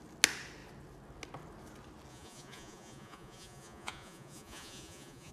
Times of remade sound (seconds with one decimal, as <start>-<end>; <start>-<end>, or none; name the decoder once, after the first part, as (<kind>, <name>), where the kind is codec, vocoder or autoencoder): 2.1-5.3 (vocoder, Vocos)